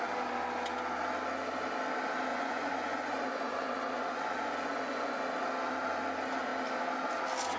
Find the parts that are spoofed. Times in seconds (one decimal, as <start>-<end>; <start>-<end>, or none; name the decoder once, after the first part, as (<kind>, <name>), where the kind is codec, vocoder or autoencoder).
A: 2.3-5.2 (vocoder, Vocos)